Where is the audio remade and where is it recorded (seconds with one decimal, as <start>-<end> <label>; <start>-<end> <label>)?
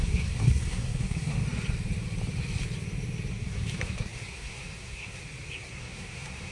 0.0-1.4 remade; 1.4-3.3 recorded; 3.3-5.2 remade; 5.2-5.7 recorded; 5.7-6.5 remade